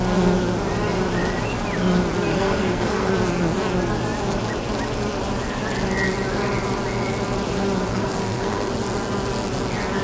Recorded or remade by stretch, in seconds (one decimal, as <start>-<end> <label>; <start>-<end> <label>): 0.0-2.3 recorded; 2.3-3.1 remade; 3.1-7.9 recorded; 7.9-8.7 remade; 8.7-10.0 recorded